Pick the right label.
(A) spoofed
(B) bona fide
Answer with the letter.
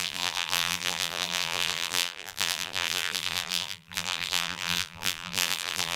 A